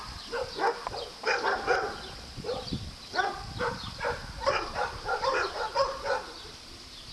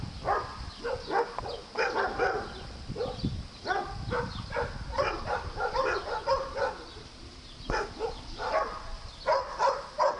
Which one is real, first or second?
second